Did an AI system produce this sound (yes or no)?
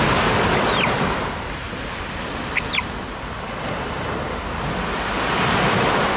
no